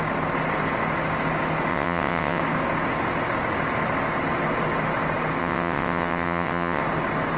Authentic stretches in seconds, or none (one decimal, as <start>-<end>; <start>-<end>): 0.0-1.7; 2.4-5.4; 6.8-7.4